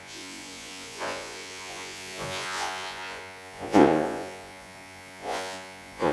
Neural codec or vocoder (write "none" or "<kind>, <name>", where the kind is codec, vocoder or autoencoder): vocoder, Vocos